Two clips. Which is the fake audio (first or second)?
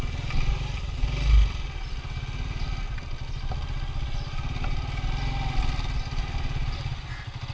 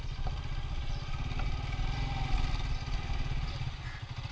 second